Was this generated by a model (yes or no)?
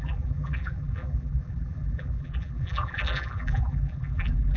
yes